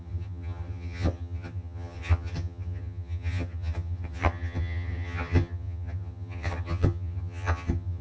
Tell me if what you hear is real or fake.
fake